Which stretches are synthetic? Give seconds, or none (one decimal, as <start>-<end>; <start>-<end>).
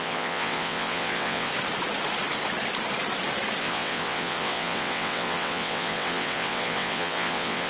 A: 0.0-1.5; 3.6-7.7